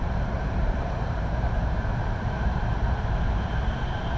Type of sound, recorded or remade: remade